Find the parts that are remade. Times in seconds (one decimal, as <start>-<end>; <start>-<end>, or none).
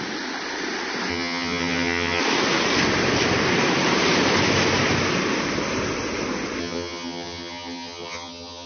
1.1-2.2; 6.6-8.7